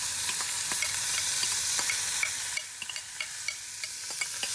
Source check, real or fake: real